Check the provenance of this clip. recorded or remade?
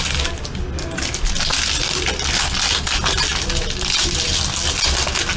recorded